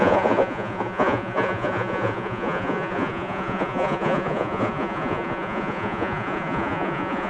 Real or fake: fake